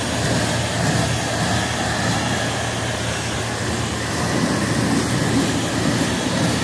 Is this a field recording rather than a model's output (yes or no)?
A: yes